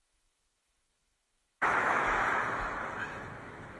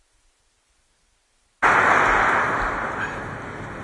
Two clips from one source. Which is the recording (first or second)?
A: second